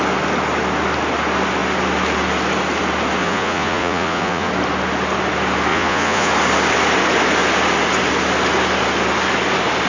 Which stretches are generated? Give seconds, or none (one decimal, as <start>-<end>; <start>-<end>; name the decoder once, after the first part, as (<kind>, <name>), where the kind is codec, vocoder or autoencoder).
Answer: 3.2-4.5 (vocoder, Vocos); 5.7-6.3